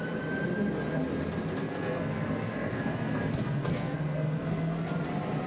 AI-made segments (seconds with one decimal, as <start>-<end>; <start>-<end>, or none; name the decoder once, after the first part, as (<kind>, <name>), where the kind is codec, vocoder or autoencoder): 1.6-4.9 (codec, SNAC)